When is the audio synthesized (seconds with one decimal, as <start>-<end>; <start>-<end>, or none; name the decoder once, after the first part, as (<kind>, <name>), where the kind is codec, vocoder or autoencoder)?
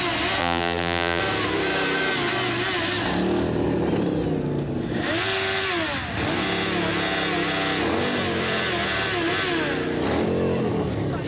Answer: 0.4-1.2 (vocoder, BigVGAN v2)